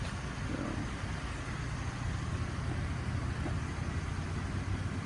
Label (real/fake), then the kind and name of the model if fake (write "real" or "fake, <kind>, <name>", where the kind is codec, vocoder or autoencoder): real